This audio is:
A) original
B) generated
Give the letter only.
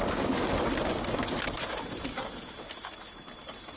A